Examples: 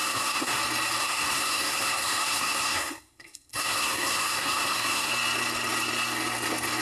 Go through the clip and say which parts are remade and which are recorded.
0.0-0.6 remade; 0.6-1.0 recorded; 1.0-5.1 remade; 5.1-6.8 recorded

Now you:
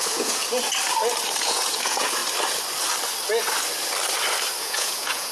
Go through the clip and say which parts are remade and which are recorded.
0.0-0.4 remade; 0.4-1.4 recorded; 1.4-2.2 remade; 2.2-4.6 recorded; 4.6-5.3 remade

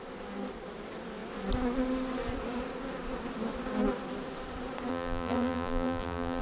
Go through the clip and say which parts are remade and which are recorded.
0.0-4.9 recorded; 4.9-6.4 remade

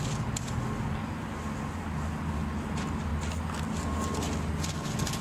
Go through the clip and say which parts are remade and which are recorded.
0.0-5.2 recorded

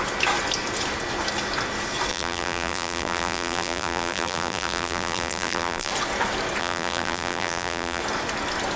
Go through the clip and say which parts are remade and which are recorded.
0.0-2.1 recorded; 2.1-5.9 remade; 5.9-6.6 recorded; 6.6-8.0 remade; 8.0-8.8 recorded

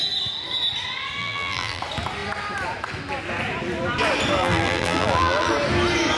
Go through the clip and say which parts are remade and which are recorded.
0.0-1.2 recorded; 1.2-1.8 remade; 1.8-4.4 recorded; 4.4-5.5 remade; 5.5-6.2 recorded

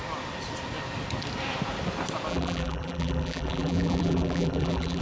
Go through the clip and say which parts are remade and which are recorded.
0.0-2.3 recorded; 2.3-5.0 remade